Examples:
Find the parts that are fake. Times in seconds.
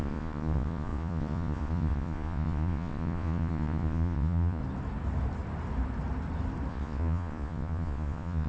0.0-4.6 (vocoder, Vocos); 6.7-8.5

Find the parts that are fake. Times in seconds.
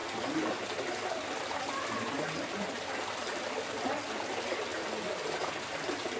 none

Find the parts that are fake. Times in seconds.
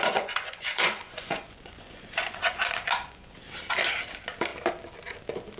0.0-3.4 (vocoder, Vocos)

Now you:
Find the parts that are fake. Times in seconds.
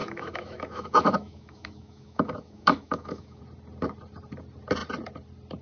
0.0-3.4 (autoencoder, DAC-VAE)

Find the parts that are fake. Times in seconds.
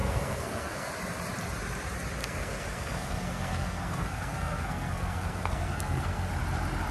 0.0-0.9 (codec, SNAC); 2.2-6.3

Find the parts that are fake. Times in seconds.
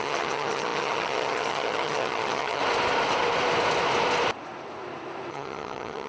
0.0-2.6 (vocoder, HiFi-GAN); 5.3-6.1